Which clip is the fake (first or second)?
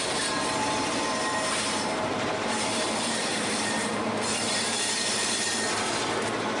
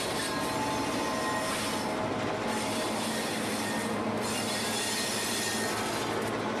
first